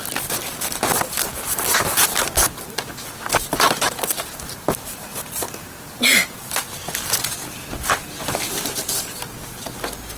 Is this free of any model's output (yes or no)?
yes